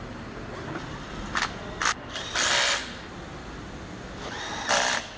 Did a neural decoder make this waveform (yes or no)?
no